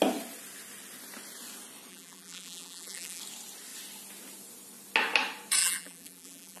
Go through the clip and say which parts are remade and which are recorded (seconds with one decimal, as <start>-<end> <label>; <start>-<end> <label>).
0.0-1.9 recorded; 1.9-3.2 remade; 3.2-5.6 recorded; 5.6-6.6 remade